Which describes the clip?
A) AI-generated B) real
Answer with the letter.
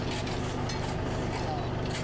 B